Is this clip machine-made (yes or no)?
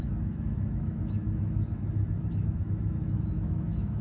yes